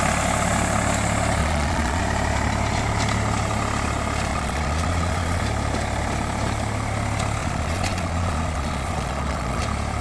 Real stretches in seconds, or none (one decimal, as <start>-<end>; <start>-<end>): 0.0-1.4; 2.0-4.3; 5.4-7.4; 9.6-10.0